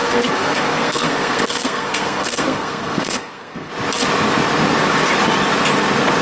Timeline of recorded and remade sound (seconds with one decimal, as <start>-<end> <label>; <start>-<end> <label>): 0.0-3.7 remade; 3.7-6.2 recorded